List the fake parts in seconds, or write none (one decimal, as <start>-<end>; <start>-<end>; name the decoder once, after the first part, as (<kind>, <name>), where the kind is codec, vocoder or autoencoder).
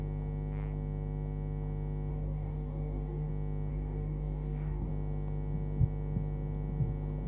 2.1-3.3 (codec, DAC); 3.7-4.9